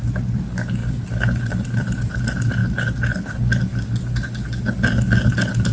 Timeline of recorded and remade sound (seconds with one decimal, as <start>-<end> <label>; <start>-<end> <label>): 0.0-5.7 recorded